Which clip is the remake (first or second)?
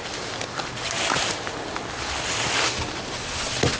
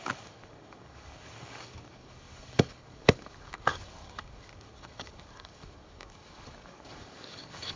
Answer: second